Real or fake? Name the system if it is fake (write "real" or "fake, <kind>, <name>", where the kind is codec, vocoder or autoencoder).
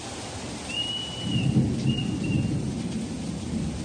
real